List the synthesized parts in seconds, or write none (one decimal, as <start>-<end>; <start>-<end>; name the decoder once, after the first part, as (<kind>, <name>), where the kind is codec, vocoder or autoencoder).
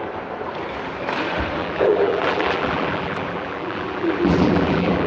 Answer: 1.6-5.1 (vocoder, BigVGAN v2)